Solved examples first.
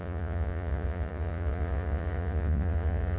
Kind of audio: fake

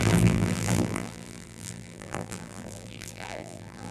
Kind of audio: fake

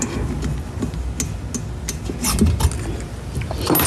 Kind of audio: real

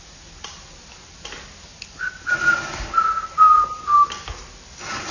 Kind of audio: real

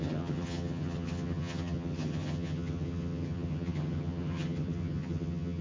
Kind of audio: fake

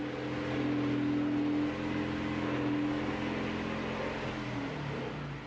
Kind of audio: real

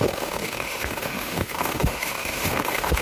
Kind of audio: fake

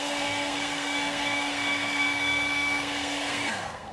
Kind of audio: fake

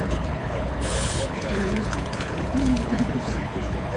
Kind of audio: fake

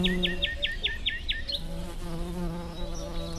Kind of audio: real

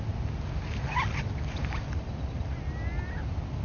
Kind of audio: real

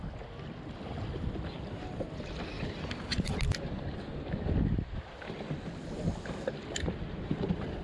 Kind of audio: real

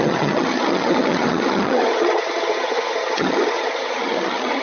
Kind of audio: fake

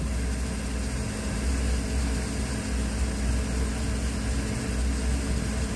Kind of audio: real